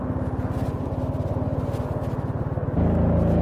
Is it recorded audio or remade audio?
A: recorded